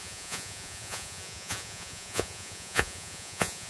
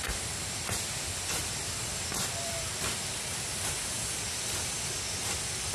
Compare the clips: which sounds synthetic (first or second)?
first